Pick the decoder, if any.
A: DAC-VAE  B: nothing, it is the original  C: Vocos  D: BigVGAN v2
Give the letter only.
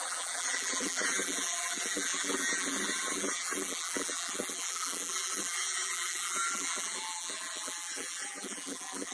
D